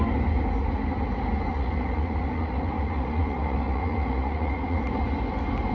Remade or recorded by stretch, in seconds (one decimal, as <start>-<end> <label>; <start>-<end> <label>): 0.0-1.5 recorded; 1.5-4.9 remade; 4.9-5.7 recorded